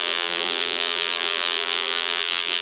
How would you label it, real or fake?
fake